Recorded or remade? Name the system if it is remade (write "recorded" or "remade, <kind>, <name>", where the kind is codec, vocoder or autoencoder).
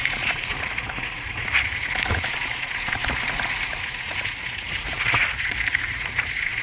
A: remade, vocoder, Vocos